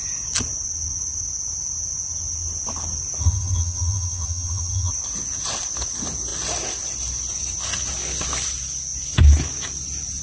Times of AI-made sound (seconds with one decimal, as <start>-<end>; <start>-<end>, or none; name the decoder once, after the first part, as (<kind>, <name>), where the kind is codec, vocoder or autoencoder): 3.2-4.9 (vocoder, HiFi-GAN)